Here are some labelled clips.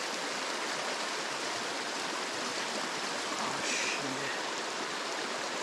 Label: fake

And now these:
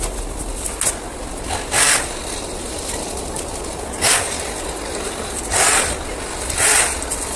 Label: real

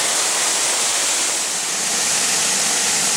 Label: real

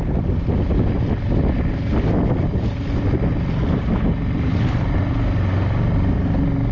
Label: real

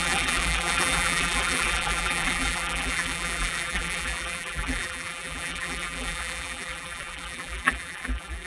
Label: fake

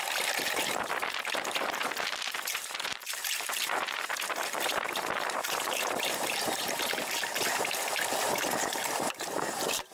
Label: fake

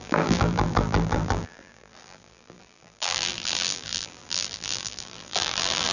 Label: fake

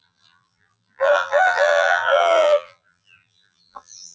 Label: fake